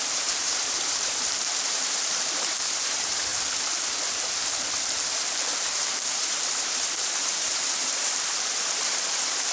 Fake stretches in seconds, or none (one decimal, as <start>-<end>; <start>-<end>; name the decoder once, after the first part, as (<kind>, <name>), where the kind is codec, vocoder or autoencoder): 0.0-3.3 (vocoder, BigVGAN v2); 5.6-9.5

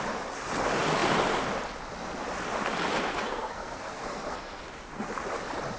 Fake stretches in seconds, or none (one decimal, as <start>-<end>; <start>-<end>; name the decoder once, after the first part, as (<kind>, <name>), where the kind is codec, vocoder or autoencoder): 2.9-5.1 (codec, SNAC)

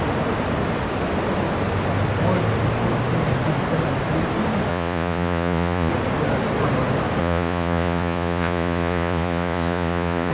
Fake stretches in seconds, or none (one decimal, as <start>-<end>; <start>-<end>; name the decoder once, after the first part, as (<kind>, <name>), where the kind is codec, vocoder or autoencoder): 4.7-5.9 (vocoder, Vocos); 7.2-10.3

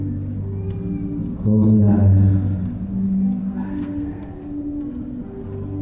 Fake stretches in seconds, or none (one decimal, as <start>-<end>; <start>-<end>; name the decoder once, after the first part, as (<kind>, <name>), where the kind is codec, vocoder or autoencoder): 3.4-4.4 (codec, SNAC)

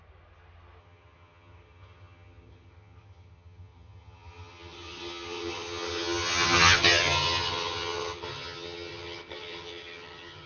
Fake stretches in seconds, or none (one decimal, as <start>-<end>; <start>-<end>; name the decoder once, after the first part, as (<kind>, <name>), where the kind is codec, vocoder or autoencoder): 0.8-10.5 (vocoder, HiFi-GAN)

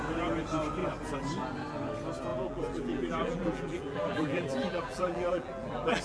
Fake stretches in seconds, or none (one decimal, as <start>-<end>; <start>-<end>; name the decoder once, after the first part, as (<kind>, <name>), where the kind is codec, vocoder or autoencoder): 2.3-6.0 (vocoder, BigVGAN v2)